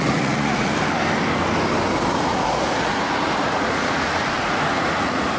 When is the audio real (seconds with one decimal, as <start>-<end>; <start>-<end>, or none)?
0.7-2.1